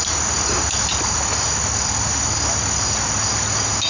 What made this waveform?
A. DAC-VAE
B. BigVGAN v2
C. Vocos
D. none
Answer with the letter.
D